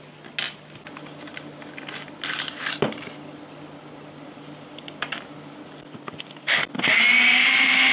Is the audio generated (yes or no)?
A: no